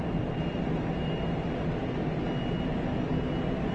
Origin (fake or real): real